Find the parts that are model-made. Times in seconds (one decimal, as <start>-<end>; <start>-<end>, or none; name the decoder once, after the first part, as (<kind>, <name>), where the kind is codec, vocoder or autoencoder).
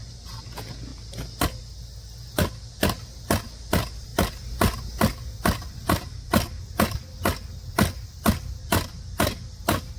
none